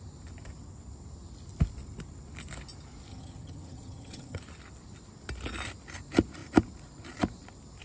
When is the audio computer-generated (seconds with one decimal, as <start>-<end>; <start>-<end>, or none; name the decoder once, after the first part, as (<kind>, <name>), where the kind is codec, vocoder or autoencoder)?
3.1-4.4 (vocoder, HiFi-GAN)